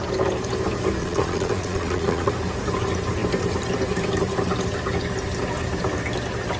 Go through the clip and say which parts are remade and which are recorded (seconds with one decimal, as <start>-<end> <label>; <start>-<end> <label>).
0.0-1.0 recorded; 1.0-2.3 remade; 2.3-6.6 recorded